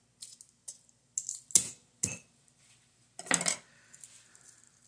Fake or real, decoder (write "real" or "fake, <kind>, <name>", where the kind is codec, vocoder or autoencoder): real